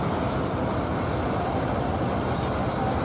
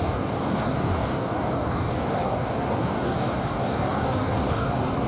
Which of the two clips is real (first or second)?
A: first